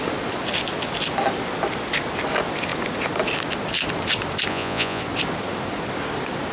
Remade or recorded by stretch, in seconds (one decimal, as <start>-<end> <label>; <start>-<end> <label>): 0.0-4.5 recorded; 4.5-5.0 remade; 5.0-6.5 recorded